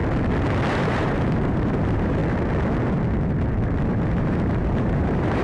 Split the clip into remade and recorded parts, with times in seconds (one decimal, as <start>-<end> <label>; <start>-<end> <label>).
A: 0.0-0.7 recorded; 0.7-2.2 remade; 2.2-4.1 recorded; 4.1-5.4 remade

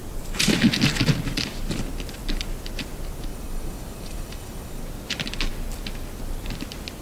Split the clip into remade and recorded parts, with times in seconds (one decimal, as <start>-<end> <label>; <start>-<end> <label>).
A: 0.0-3.3 recorded; 3.3-4.8 remade; 4.8-7.0 recorded

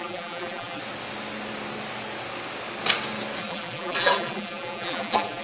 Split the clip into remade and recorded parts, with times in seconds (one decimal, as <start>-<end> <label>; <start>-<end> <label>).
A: 0.0-0.8 remade; 0.8-3.4 recorded; 3.4-5.4 remade

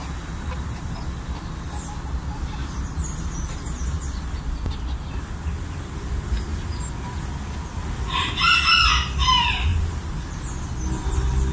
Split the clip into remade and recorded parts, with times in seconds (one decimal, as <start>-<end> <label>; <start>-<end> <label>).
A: 0.0-2.6 recorded; 2.6-4.4 remade; 4.4-7.8 recorded; 7.8-8.5 remade; 8.5-9.7 recorded; 9.7-10.4 remade; 10.4-11.5 recorded

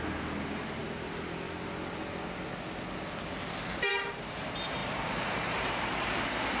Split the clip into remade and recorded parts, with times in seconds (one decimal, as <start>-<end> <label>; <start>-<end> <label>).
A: 0.0-0.8 remade; 0.8-3.9 recorded; 3.9-6.6 remade